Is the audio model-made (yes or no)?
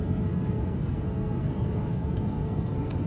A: yes